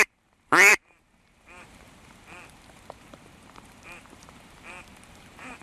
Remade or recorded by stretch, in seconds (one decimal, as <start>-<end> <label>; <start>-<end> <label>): 0.0-5.6 remade